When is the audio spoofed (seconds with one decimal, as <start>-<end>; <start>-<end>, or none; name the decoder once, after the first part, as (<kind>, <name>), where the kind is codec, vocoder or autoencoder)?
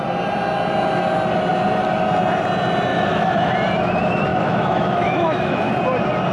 2.9-3.5 (autoencoder, DAC-VAE); 4.3-5.7